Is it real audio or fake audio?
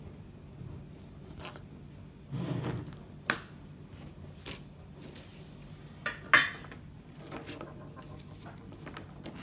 real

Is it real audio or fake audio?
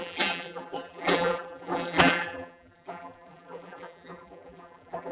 fake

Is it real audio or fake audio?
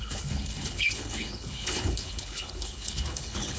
fake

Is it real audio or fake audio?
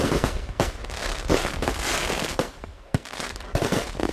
fake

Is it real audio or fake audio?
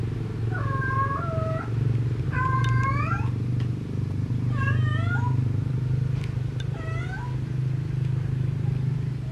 real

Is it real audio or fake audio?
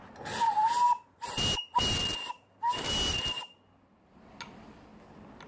real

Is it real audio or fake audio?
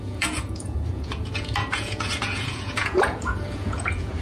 fake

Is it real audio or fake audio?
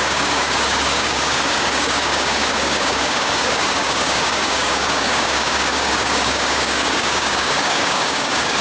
fake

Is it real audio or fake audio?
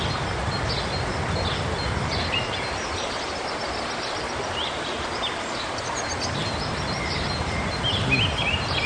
real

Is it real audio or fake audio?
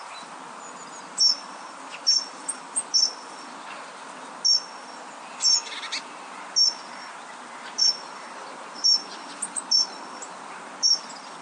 real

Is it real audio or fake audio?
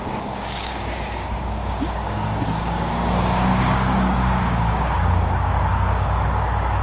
fake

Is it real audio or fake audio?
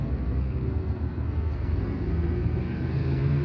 fake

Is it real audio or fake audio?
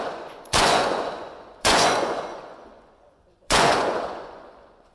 fake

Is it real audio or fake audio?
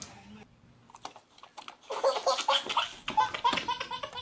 real